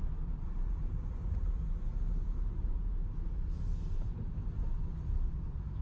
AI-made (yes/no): yes